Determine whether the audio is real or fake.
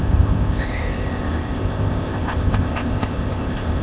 fake